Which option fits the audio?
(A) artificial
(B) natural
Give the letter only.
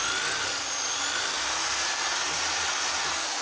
B